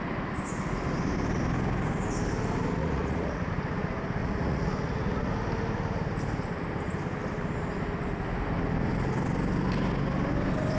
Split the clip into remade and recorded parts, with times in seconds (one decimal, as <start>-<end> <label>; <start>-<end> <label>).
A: 0.0-2.8 recorded; 2.8-3.5 remade; 3.5-4.2 recorded; 4.2-5.3 remade; 5.3-10.8 recorded